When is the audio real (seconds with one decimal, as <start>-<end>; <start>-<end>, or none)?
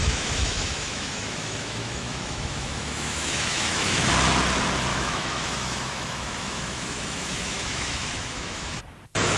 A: 4.1-4.9; 8.8-9.4